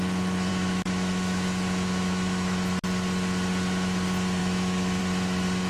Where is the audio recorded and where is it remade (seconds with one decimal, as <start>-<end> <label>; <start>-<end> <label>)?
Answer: 0.0-0.5 recorded; 0.5-2.8 remade; 2.8-4.4 recorded; 4.4-5.0 remade; 5.0-5.7 recorded